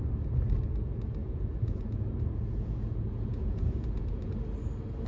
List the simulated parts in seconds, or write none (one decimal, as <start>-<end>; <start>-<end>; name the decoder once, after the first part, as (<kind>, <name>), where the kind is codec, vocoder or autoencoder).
1.2-4.3 (vocoder, Vocos)